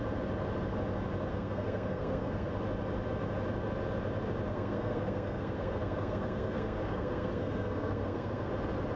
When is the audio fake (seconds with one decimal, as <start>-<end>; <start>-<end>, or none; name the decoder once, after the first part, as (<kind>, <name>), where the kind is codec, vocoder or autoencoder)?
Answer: 1.3-2.5 (codec, SNAC); 4.5-8.5